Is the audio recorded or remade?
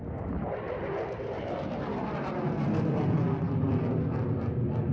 recorded